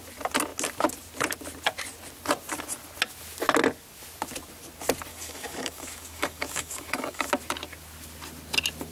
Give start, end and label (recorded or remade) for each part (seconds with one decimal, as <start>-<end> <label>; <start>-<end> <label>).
0.0-5.1 recorded; 5.1-7.3 remade; 7.3-8.9 recorded